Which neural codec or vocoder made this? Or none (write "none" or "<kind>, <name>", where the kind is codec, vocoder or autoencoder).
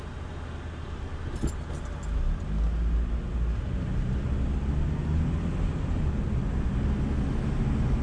none